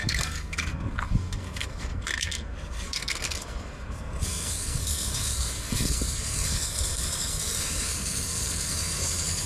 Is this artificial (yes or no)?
yes